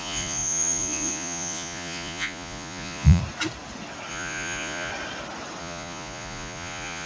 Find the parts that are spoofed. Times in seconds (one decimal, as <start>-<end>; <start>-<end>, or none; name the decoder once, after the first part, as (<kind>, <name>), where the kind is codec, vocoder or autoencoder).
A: 0.0-3.2 (vocoder, Vocos); 4.1-4.9; 5.6-7.1